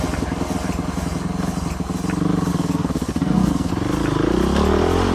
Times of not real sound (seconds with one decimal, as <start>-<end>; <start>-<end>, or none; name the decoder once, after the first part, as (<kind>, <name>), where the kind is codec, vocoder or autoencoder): 2.5-3.7 (codec, SNAC)